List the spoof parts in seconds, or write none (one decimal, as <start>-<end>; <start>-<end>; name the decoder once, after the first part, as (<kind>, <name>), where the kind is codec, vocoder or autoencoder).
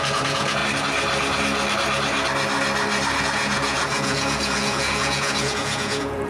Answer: 0.0-0.6 (vocoder, Vocos); 3.2-6.3